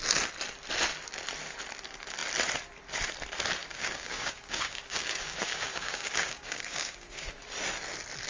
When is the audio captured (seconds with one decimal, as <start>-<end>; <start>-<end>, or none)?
0.0-3.6; 7.4-8.3